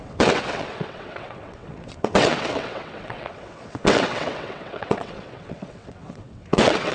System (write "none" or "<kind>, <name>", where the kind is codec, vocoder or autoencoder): vocoder, WaveNeXt